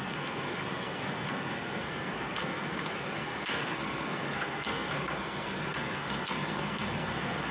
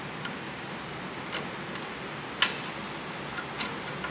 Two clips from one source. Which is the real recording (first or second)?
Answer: second